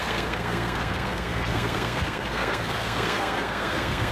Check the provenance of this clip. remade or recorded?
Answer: remade